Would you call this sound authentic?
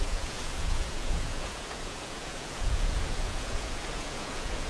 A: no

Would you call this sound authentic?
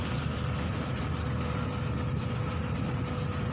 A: yes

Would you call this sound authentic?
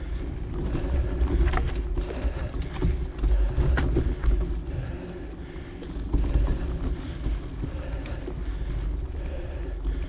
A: yes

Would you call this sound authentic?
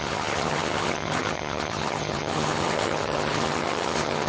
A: no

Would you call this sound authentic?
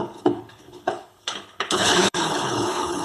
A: no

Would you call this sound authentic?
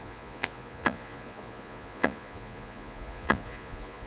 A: no